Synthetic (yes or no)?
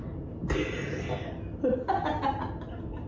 no